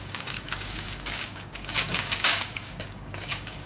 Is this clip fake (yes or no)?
yes